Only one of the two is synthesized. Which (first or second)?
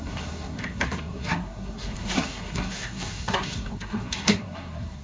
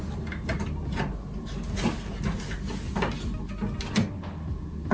first